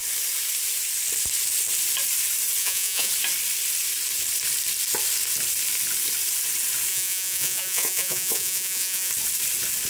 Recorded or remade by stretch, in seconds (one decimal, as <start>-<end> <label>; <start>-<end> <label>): 0.0-2.6 recorded; 2.6-3.1 remade; 3.1-6.9 recorded; 6.9-9.1 remade; 9.1-9.9 recorded